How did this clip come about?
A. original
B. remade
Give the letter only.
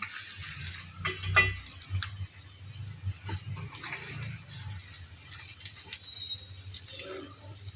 A